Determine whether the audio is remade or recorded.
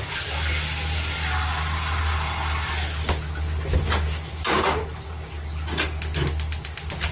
recorded